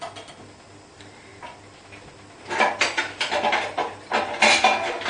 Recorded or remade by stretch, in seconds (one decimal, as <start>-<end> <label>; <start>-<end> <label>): 0.0-5.1 recorded